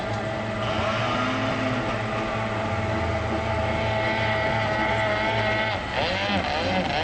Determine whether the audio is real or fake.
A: real